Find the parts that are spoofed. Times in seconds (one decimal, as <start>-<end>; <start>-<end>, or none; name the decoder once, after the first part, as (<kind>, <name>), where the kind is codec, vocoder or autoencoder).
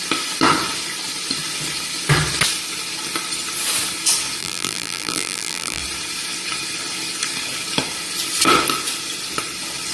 4.4-5.8 (vocoder, BigVGAN v2)